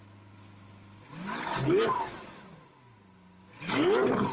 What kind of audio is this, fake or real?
real